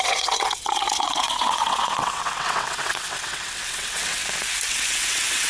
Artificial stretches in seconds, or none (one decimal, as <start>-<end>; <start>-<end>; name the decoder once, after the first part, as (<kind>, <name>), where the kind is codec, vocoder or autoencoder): 0.0-4.2 (vocoder, WaveNeXt); 4.7-5.5